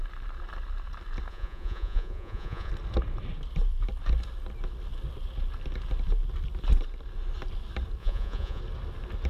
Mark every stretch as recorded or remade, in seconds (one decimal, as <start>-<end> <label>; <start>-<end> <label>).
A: 0.0-1.3 recorded; 1.3-2.7 remade; 2.7-8.0 recorded; 8.0-8.6 remade; 8.6-9.3 recorded